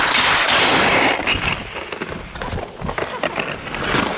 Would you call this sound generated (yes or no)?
no